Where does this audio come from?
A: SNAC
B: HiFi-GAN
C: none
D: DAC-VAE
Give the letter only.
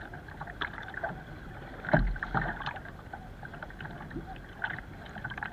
C